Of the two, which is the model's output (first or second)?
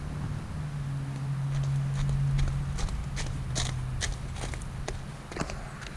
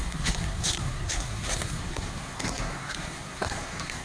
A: second